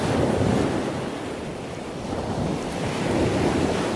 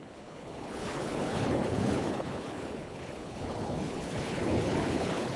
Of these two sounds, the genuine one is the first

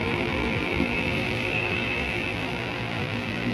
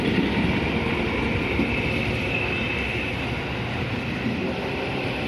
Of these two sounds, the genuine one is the second